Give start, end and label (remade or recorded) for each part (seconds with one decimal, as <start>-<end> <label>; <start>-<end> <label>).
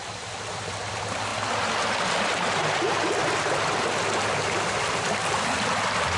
0.0-1.3 remade; 1.3-4.8 recorded; 4.8-6.2 remade